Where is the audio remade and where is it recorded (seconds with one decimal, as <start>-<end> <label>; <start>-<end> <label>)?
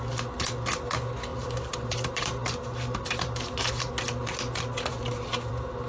0.0-1.3 recorded; 1.3-3.9 remade; 3.9-4.9 recorded; 4.9-5.5 remade; 5.5-5.9 recorded